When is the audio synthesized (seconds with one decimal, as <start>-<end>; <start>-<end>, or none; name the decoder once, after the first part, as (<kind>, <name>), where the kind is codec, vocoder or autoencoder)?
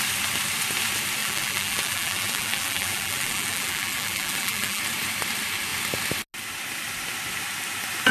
1.2-4.8 (vocoder, BigVGAN v2)